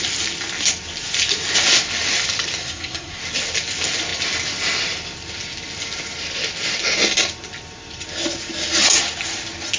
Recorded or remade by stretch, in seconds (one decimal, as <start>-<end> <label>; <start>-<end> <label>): 0.0-2.6 recorded; 2.6-3.2 remade; 3.2-9.8 recorded